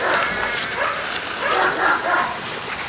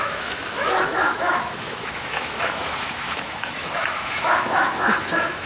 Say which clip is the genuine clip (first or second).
first